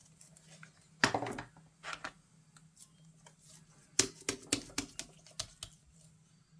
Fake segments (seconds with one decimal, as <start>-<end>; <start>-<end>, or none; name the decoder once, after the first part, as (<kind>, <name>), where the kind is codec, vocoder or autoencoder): none